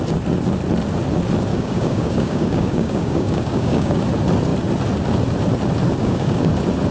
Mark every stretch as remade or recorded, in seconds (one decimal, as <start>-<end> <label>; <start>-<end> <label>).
0.0-1.5 recorded; 1.5-4.0 remade; 4.0-6.0 recorded; 6.0-6.5 remade; 6.5-6.9 recorded